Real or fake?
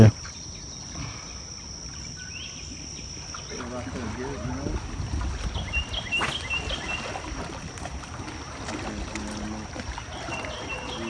real